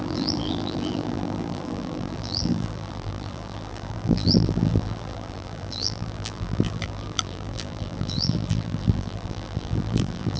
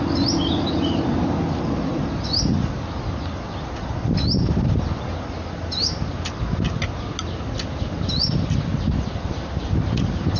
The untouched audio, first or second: second